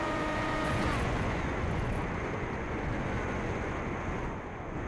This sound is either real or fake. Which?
fake